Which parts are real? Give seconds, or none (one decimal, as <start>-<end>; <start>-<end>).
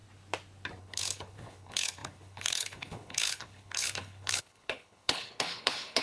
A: 0.0-0.8